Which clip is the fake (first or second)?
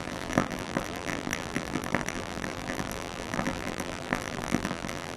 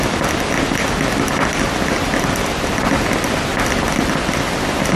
first